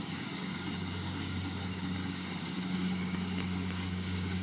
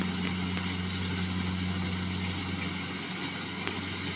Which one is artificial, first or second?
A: first